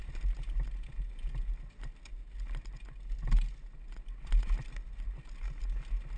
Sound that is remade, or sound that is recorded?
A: recorded